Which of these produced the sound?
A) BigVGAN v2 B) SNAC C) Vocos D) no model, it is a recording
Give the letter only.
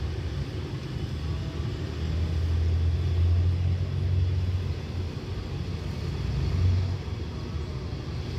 D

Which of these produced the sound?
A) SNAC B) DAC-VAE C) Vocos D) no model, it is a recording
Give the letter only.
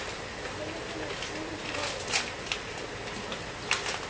D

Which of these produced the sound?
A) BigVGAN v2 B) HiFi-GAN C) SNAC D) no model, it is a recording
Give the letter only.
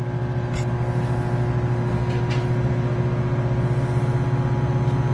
D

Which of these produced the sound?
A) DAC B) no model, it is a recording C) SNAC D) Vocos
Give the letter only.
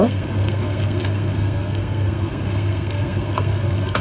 C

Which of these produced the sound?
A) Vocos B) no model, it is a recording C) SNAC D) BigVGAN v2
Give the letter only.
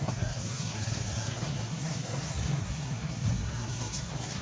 C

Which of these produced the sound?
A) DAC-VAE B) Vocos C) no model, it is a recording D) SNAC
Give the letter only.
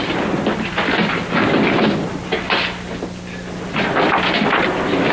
C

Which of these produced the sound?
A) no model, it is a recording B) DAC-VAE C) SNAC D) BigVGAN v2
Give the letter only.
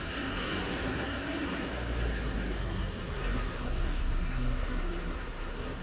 C